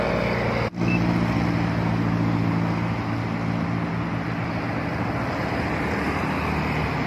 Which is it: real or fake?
real